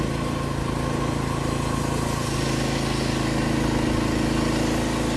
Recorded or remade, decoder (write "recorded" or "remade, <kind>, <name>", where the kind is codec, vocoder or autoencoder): recorded